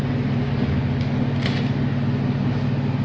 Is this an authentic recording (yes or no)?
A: yes